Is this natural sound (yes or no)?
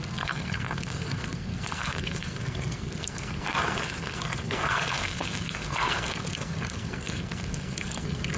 no